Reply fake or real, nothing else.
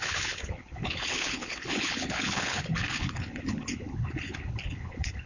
fake